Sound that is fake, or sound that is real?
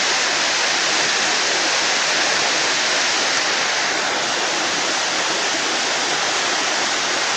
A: real